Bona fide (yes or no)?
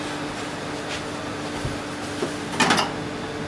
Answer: yes